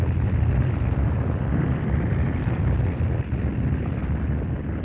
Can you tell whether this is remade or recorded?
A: remade